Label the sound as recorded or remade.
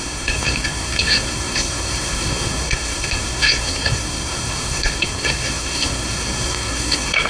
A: remade